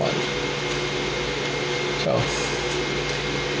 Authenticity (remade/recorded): recorded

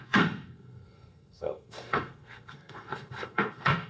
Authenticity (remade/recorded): remade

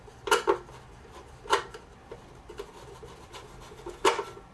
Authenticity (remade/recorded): recorded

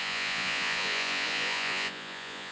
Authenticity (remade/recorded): remade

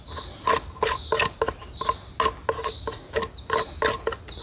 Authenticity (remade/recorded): recorded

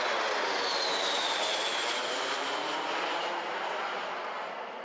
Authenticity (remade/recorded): recorded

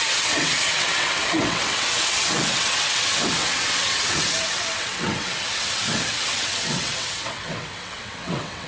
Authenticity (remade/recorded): remade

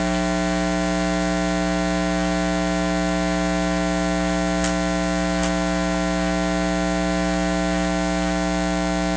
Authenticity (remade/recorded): recorded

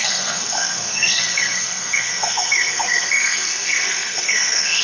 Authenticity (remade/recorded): remade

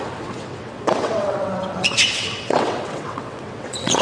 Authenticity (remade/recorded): remade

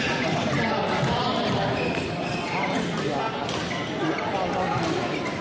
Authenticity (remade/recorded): recorded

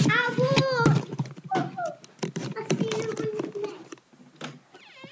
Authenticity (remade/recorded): recorded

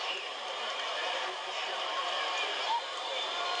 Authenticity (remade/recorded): remade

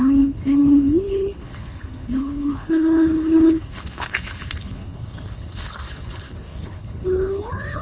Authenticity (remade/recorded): remade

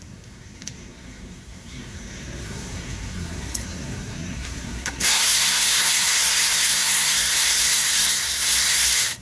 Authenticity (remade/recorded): remade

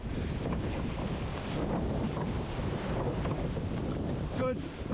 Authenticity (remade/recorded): remade